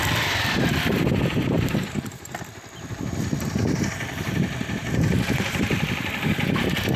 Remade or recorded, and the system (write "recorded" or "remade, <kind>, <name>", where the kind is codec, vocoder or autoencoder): recorded